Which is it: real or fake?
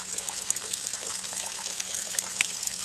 fake